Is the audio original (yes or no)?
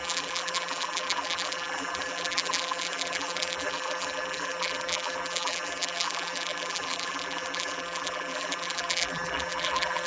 no